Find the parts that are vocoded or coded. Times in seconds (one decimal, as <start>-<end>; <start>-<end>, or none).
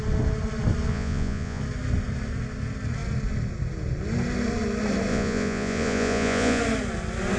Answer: 0.9-1.6; 5.1-6.6